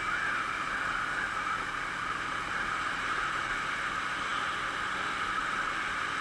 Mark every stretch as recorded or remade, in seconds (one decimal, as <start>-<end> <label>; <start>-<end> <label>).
0.0-6.2 recorded